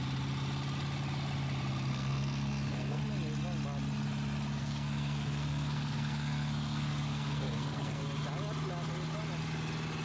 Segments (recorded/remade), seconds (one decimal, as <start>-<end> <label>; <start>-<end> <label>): 0.0-1.9 recorded; 1.9-3.0 remade; 3.0-4.6 recorded; 4.6-8.0 remade; 8.0-10.0 recorded